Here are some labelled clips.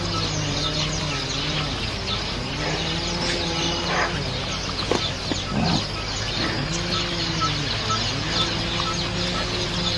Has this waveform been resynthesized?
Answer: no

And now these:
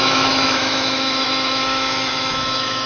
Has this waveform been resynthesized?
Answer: yes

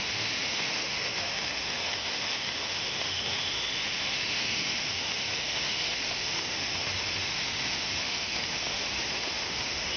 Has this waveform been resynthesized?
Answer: yes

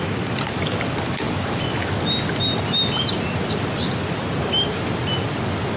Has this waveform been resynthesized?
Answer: no